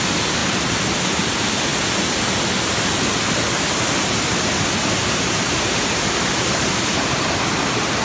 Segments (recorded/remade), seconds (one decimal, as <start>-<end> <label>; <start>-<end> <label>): 0.0-0.4 remade; 0.4-1.1 recorded; 1.1-1.7 remade; 1.7-5.0 recorded; 5.0-8.0 remade